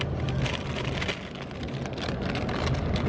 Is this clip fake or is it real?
real